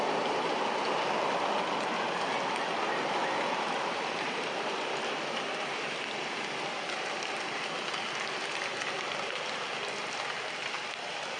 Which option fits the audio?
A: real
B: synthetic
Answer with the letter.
A